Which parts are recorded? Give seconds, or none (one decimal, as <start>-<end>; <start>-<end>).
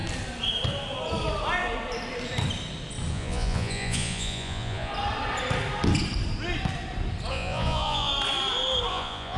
0.0-3.1; 4.9-7.3; 8.1-8.9